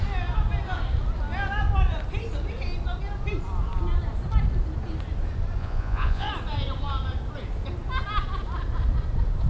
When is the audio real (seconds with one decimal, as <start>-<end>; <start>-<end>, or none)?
0.0-5.6; 6.3-9.5